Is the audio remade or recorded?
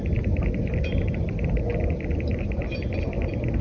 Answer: remade